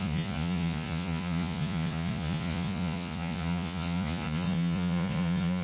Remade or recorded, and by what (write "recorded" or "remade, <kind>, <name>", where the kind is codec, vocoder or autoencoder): remade, vocoder, Vocos